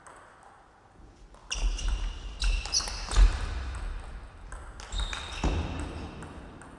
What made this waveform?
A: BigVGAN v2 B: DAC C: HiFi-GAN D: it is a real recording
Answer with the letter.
D